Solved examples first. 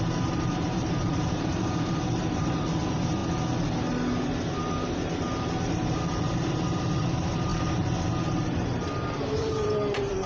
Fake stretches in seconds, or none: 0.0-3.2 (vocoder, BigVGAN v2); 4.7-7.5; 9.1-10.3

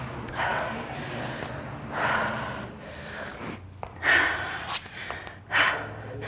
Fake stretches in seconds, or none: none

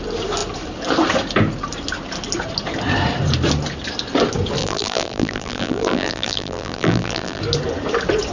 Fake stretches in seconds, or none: 4.6-7.4 (vocoder, BigVGAN v2)